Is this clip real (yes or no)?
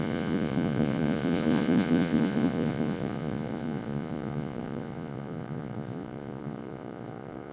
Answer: no